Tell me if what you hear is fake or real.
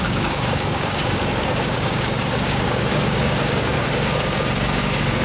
fake